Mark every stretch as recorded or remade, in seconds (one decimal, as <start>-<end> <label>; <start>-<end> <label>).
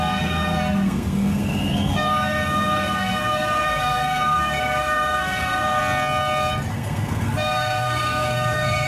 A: 0.0-5.8 remade; 5.8-6.7 recorded; 6.7-8.9 remade